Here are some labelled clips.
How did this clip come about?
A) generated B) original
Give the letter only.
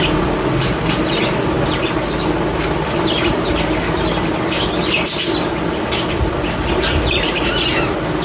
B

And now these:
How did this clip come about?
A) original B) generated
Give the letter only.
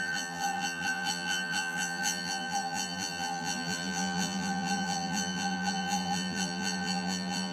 B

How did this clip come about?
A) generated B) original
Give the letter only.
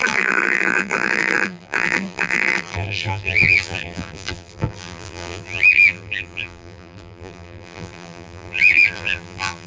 A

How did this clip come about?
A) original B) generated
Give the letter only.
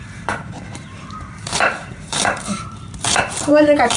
B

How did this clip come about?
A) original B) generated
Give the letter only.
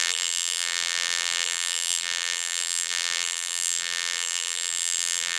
B